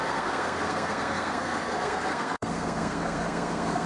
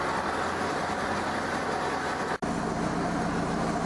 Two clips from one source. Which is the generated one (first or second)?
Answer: first